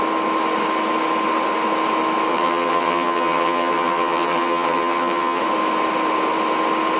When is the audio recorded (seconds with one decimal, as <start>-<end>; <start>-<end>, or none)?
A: 0.0-2.3; 5.4-7.0